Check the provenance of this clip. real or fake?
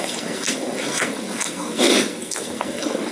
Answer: fake